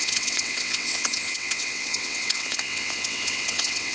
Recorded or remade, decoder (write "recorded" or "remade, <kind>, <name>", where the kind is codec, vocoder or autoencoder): remade, vocoder, WaveNeXt